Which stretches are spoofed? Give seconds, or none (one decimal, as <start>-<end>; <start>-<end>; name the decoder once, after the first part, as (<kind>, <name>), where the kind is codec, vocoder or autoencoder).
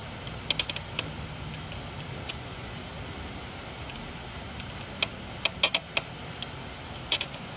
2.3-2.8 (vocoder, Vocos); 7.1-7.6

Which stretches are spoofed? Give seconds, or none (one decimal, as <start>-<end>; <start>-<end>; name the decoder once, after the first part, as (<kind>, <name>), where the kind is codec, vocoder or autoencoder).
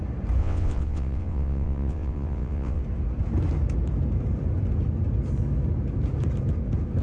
0.4-2.8 (vocoder, WaveNeXt)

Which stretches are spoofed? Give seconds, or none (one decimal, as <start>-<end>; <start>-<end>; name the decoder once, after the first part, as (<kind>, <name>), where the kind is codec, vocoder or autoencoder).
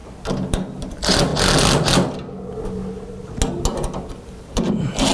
0.9-1.3 (vocoder, BigVGAN v2); 4.4-5.1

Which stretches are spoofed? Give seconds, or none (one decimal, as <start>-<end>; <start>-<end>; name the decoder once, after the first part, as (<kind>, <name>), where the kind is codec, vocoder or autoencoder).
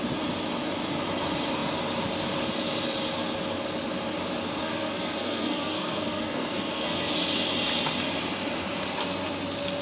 4.6-7.1 (codec, SNAC)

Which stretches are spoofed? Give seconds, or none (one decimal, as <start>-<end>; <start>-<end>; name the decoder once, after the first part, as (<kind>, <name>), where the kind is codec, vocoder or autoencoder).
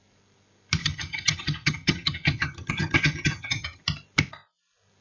0.8-3.8 (vocoder, HiFi-GAN)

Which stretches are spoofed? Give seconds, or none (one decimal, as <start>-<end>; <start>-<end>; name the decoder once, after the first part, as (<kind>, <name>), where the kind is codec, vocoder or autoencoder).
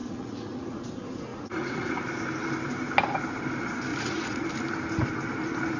0.0-0.8 (vocoder, Vocos); 1.3-2.0; 3.9-4.5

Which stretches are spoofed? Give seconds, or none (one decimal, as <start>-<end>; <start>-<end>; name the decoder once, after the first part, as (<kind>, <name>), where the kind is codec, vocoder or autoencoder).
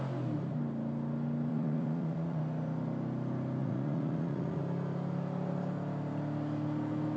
1.5-2.4 (vocoder, Vocos); 3.6-4.6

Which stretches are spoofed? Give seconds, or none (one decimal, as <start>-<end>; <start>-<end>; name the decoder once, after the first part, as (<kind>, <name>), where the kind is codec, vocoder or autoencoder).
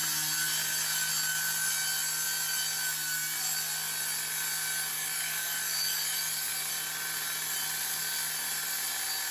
4.9-6.7 (codec, DAC)